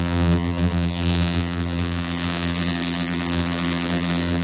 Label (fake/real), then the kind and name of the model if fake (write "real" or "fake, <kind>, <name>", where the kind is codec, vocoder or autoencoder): fake, vocoder, BigVGAN v2